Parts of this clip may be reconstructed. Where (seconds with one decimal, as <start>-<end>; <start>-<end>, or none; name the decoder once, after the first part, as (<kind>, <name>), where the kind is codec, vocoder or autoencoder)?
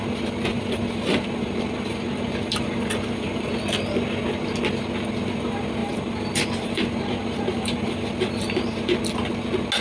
0.5-3.5 (vocoder, BigVGAN v2); 5.8-9.0